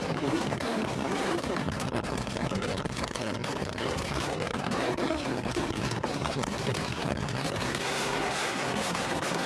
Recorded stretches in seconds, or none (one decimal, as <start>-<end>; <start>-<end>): none